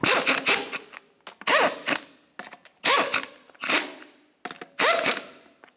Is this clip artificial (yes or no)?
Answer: no